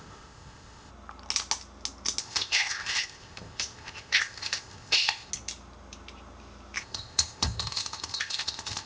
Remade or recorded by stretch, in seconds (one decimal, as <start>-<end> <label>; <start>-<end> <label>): 0.0-0.9 remade; 0.9-2.2 recorded; 2.2-5.3 remade; 5.3-6.8 recorded; 6.8-8.9 remade